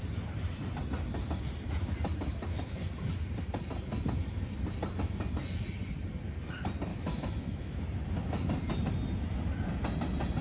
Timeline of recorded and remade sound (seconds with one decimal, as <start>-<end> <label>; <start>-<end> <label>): 0.0-6.9 recorded; 6.9-7.8 remade; 7.8-10.4 recorded